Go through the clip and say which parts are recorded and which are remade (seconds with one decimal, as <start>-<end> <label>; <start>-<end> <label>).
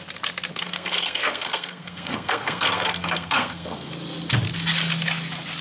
0.0-0.5 recorded; 0.5-3.9 remade; 3.9-5.6 recorded